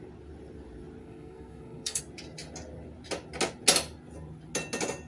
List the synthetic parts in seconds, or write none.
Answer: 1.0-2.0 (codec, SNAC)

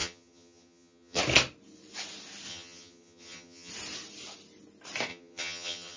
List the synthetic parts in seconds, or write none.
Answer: 0.0-1.2 (vocoder, HiFi-GAN); 2.5-3.7; 5.1-6.0

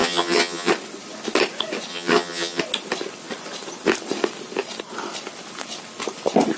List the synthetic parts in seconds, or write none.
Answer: 0.0-0.7 (vocoder, HiFi-GAN); 1.9-2.6

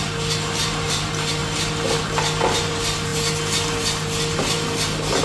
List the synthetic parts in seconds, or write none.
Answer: none

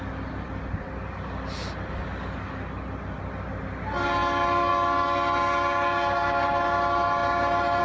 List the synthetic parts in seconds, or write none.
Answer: none

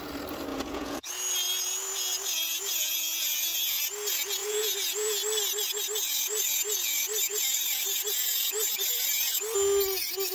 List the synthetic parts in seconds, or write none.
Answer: 0.5-1.1 (vocoder, Vocos); 2.5-3.8; 4.4-5.2